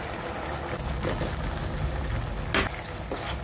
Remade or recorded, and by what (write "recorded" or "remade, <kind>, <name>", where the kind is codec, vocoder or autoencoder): recorded